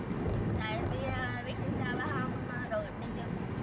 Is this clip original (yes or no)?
yes